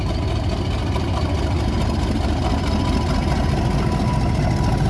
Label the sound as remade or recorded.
recorded